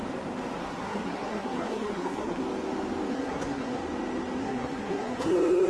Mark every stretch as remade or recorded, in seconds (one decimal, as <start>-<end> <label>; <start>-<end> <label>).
0.0-0.6 recorded; 0.6-2.4 remade; 2.4-3.1 recorded; 3.1-3.8 remade; 3.8-4.4 recorded; 4.4-5.7 remade